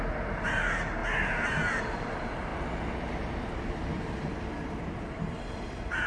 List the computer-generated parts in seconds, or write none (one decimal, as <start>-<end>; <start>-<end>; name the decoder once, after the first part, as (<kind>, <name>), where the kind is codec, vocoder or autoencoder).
0.0-1.0 (vocoder, BigVGAN v2); 1.8-2.5; 4.8-6.1